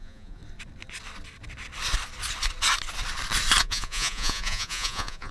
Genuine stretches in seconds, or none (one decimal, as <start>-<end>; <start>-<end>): 0.4-3.6